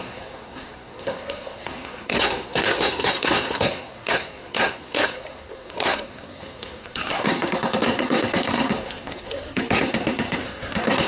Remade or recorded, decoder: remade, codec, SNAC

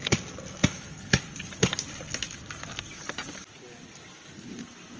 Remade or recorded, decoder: recorded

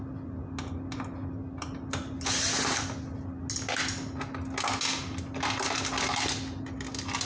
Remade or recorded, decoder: recorded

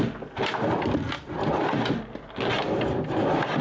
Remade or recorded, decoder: recorded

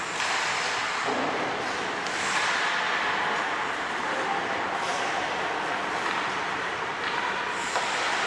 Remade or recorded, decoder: recorded